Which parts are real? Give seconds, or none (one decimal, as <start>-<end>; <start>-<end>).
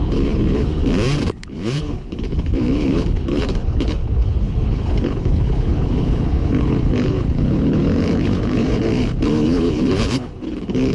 0.8-1.3